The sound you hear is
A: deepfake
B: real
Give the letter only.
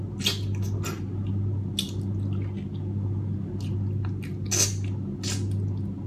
B